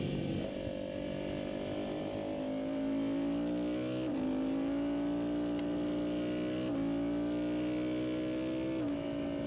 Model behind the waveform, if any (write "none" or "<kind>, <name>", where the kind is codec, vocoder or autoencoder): none